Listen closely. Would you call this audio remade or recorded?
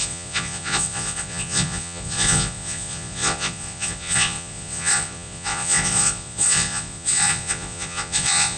remade